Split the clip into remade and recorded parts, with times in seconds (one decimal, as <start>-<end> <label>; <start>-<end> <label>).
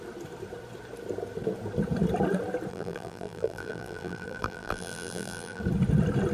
0.0-2.7 recorded; 2.7-5.6 remade; 5.6-6.3 recorded